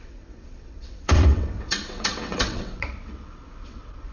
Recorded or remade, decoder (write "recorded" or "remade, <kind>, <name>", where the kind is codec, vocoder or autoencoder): remade, vocoder, WaveNeXt